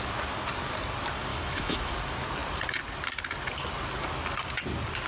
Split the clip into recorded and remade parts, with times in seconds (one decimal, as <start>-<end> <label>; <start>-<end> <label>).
0.0-1.3 recorded; 1.3-1.9 remade; 1.9-5.1 recorded